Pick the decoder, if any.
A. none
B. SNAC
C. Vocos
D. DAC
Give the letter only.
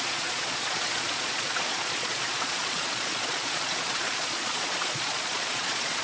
C